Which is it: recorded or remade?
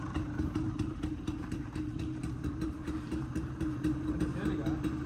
remade